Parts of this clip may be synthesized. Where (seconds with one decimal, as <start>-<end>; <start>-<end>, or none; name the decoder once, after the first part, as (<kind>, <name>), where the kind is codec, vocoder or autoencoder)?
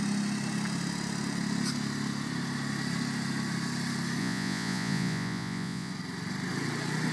4.2-5.9 (vocoder, Vocos)